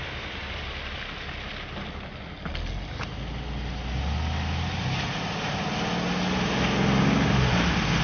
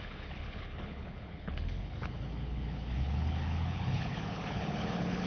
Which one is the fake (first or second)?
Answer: second